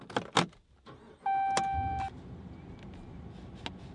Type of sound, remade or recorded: recorded